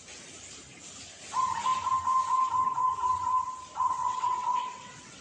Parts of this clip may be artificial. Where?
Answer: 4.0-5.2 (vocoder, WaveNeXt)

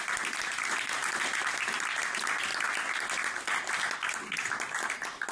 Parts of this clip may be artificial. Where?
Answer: none

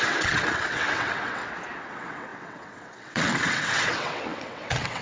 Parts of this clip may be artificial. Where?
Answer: 0.0-1.4 (vocoder, WaveNeXt); 1.9-5.0

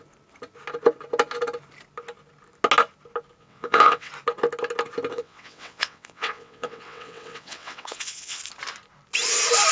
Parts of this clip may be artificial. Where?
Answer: 3.4-4.1 (vocoder, WaveNeXt); 5.1-8.4